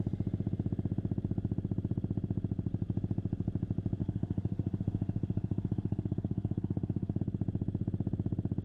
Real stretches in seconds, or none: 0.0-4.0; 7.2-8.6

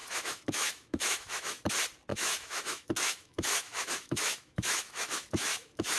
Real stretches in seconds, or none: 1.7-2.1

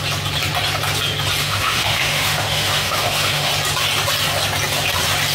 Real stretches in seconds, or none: 0.0-1.4; 3.5-5.3